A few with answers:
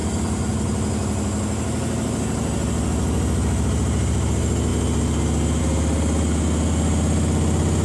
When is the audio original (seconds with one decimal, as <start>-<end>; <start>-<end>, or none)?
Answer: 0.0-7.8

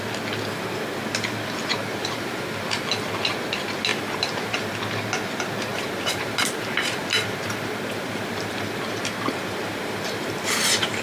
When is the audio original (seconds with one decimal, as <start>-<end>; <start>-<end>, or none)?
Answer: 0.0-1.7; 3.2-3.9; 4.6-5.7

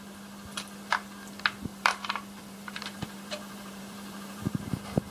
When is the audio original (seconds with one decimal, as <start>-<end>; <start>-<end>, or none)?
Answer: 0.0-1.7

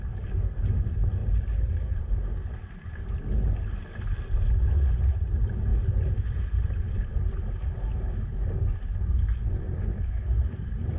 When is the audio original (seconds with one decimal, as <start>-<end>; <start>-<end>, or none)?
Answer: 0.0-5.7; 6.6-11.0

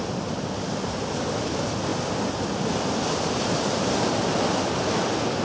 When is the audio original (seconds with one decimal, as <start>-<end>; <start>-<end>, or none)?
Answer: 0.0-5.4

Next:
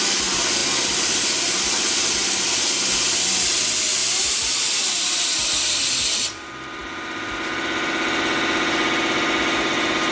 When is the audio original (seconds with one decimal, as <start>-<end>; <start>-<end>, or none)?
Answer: 0.0-4.0; 5.6-10.1